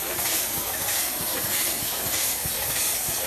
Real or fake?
fake